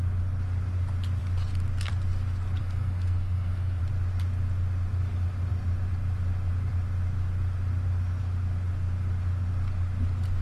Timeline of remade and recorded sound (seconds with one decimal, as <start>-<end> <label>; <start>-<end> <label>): 0.0-2.6 recorded; 2.6-3.8 remade; 3.8-10.4 recorded